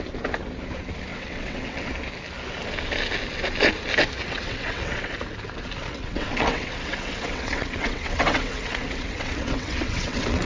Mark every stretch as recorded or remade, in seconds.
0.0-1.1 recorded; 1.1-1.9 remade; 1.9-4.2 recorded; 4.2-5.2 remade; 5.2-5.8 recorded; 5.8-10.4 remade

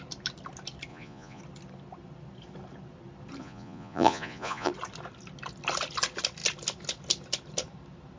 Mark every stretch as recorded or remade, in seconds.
0.0-0.9 recorded; 0.9-1.4 remade; 1.4-3.4 recorded; 3.4-4.7 remade; 4.7-8.2 recorded

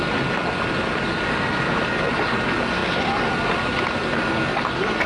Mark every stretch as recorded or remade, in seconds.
0.0-5.1 recorded

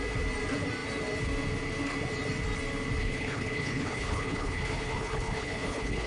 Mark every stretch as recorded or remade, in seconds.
0.0-3.0 recorded; 3.0-6.1 remade